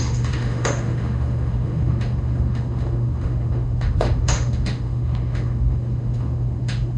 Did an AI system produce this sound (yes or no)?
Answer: yes